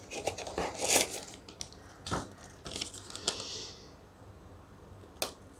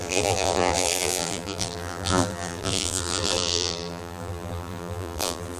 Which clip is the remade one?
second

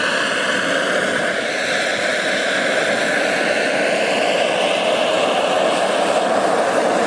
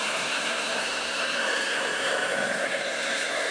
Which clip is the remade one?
second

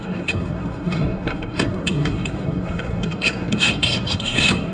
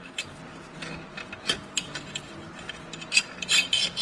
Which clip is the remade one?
first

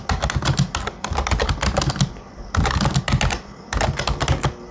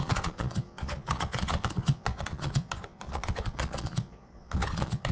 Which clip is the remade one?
second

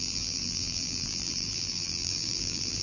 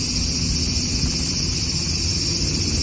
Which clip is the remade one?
first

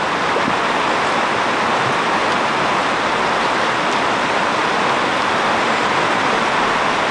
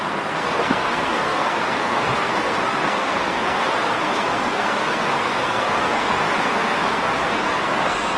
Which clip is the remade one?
second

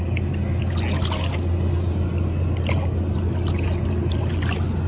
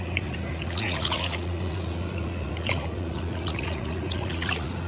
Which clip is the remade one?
second